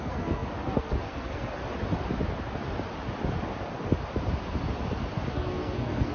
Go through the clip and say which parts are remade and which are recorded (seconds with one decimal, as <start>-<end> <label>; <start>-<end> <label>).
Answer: 0.0-1.6 remade; 1.6-5.3 recorded; 5.3-6.1 remade

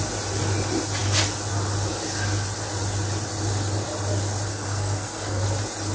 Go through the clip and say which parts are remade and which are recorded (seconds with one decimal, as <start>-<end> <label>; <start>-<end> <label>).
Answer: 0.0-4.5 recorded; 4.5-5.4 remade; 5.4-5.9 recorded